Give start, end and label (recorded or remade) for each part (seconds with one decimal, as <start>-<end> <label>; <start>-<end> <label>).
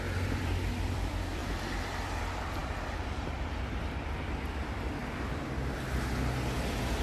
0.0-5.0 remade; 5.0-7.0 recorded